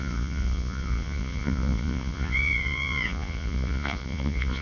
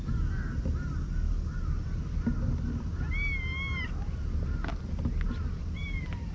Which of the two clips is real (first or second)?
second